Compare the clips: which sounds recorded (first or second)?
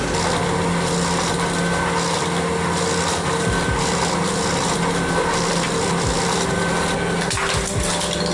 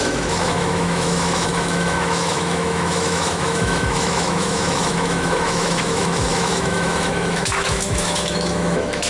first